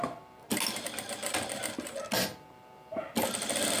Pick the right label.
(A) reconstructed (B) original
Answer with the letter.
B